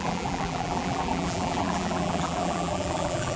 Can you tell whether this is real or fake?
fake